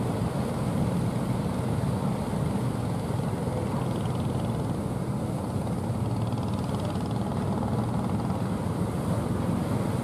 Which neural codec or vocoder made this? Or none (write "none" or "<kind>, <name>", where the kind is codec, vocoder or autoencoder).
none